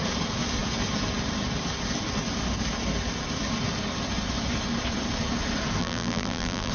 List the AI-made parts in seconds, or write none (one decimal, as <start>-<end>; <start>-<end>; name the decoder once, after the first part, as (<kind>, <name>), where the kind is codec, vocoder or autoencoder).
5.8-6.7 (vocoder, BigVGAN v2)